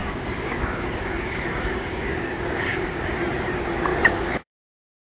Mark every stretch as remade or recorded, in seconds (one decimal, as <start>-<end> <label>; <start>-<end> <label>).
0.0-3.1 remade; 3.1-3.9 recorded; 3.9-5.1 remade